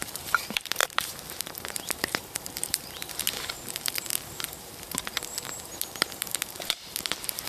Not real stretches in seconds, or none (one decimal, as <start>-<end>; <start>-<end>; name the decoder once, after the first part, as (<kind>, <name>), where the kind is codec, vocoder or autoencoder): 0.0-7.5 (vocoder, BigVGAN v2)

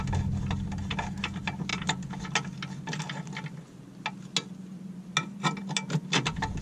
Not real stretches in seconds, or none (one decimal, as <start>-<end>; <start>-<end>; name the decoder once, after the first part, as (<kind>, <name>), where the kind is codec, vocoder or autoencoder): none

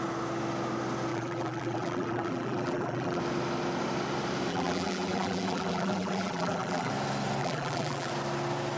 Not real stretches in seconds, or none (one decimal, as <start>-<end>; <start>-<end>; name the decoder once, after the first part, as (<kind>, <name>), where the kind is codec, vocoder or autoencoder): 1.1-3.2 (vocoder, BigVGAN v2); 4.5-6.9; 7.4-8.1

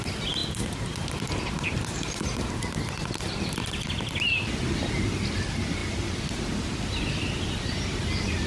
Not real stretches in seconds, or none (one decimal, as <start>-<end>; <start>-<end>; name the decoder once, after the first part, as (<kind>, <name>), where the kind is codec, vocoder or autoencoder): 0.0-0.4 (vocoder, BigVGAN v2); 2.5-5.8; 6.9-8.5

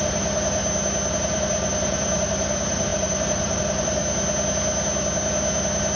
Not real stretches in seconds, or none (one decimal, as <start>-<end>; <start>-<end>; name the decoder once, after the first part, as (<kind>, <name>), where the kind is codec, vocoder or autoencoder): 0.0-0.6 (vocoder, BigVGAN v2); 1.1-4.0